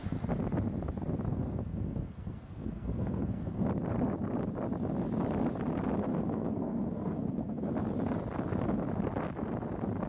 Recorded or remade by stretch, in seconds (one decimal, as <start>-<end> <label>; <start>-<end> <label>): 0.0-1.3 recorded; 1.3-3.6 remade; 3.6-6.1 recorded; 6.1-7.7 remade; 7.7-10.1 recorded